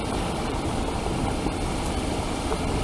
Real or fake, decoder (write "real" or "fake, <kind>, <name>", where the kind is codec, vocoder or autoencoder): fake, vocoder, BigVGAN v2